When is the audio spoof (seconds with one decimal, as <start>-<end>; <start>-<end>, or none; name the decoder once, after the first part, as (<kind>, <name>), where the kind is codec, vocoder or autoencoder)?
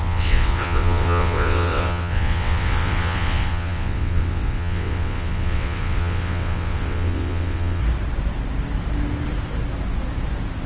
0.0-7.8 (vocoder, WaveNeXt)